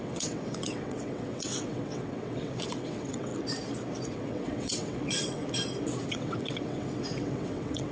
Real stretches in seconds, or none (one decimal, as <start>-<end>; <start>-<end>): 3.3-4.1; 5.4-6.1